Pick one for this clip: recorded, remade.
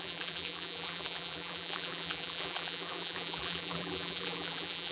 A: remade